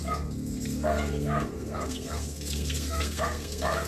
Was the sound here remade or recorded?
remade